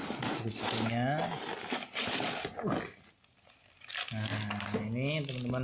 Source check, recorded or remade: recorded